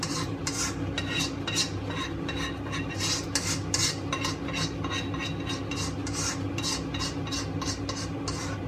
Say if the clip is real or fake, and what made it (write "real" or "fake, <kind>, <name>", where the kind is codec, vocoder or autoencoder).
real